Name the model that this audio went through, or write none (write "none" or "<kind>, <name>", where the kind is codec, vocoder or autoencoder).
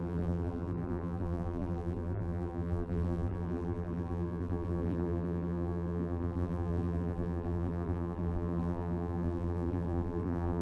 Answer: vocoder, BigVGAN v2